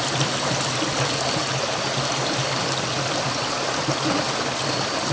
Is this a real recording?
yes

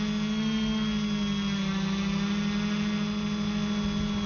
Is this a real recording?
yes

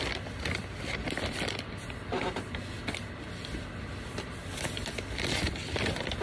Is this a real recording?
yes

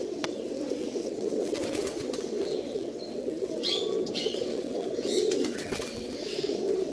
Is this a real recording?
no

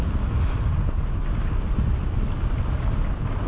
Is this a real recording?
yes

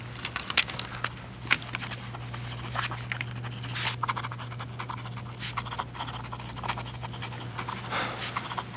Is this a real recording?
yes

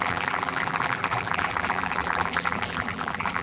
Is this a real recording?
no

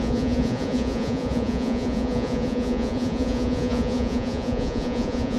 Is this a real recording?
no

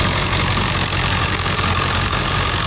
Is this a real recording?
no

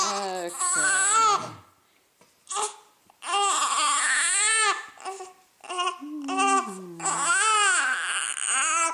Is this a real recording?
yes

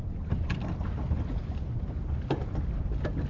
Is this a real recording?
yes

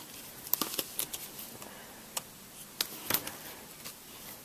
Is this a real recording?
yes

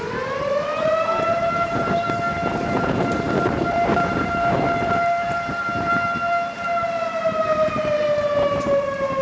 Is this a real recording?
no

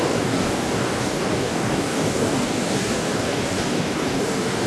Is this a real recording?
no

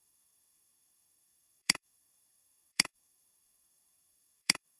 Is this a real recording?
no